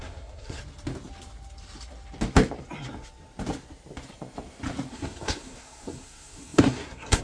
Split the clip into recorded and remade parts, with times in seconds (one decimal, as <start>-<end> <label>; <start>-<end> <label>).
0.0-0.6 remade; 0.6-4.9 recorded; 4.9-7.2 remade